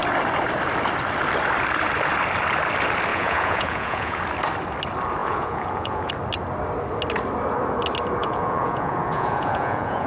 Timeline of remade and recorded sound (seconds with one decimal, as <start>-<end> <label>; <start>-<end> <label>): 0.0-3.1 recorded; 3.1-4.2 remade; 4.2-5.2 recorded; 5.2-6.1 remade; 6.1-8.2 recorded; 8.2-10.1 remade